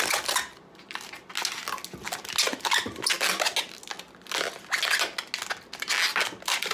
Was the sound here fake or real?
real